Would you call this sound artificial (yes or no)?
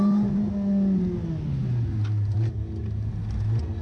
no